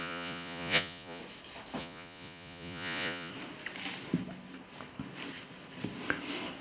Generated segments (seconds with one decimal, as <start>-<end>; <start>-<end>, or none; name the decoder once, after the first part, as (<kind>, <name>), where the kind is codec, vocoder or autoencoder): 0.0-1.2 (vocoder, Vocos); 1.8-3.3